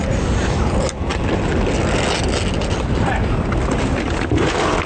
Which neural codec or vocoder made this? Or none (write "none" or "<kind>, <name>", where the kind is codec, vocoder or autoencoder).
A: none